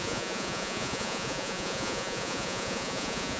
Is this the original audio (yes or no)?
no